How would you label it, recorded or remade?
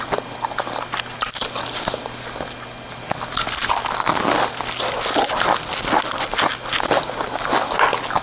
recorded